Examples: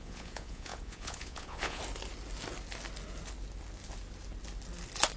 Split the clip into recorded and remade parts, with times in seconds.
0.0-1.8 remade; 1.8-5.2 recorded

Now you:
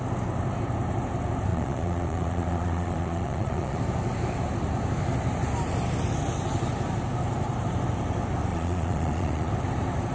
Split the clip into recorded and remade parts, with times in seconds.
0.0-1.5 recorded; 1.5-3.8 remade; 3.8-8.5 recorded; 8.5-9.5 remade; 9.5-10.1 recorded

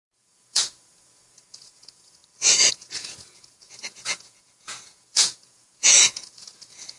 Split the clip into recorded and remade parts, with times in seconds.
0.0-2.2 remade; 2.2-2.7 recorded; 2.7-7.0 remade

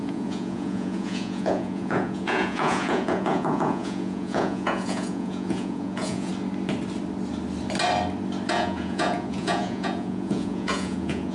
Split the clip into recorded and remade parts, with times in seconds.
0.0-6.3 remade; 6.3-8.5 recorded; 8.5-11.3 remade